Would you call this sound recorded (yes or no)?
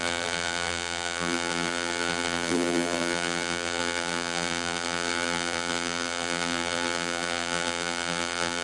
no